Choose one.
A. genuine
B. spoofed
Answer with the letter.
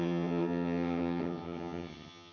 B